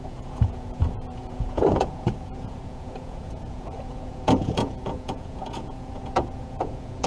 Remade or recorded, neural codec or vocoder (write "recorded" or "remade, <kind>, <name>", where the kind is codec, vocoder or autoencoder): remade, vocoder, Vocos